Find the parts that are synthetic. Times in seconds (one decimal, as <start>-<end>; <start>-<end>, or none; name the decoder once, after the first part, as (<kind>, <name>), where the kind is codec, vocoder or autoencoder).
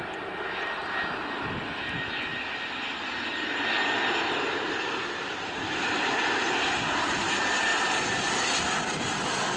none